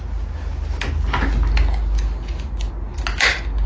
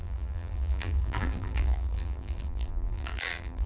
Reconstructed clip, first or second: second